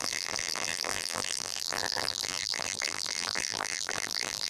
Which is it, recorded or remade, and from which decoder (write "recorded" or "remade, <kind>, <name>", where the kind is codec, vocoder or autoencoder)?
remade, vocoder, BigVGAN v2